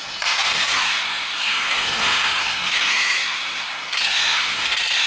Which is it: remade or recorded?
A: remade